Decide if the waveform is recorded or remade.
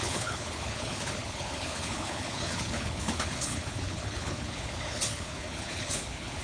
remade